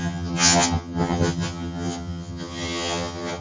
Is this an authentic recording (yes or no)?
no